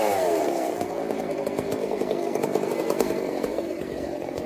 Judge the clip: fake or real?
fake